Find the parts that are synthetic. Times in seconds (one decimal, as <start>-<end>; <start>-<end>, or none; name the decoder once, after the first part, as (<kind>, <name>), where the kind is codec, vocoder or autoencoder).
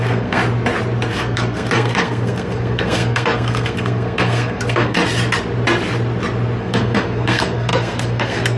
0.0-0.4 (codec, SNAC); 1.1-5.0; 6.6-8.6